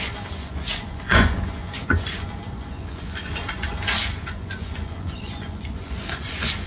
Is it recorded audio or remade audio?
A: remade